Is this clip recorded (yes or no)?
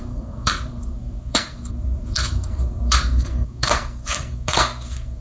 no